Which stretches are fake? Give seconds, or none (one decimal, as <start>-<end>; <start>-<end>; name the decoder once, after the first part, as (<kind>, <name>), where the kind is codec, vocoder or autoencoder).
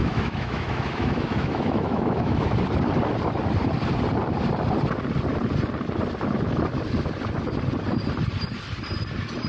0.0-2.5 (autoencoder, DAC-VAE)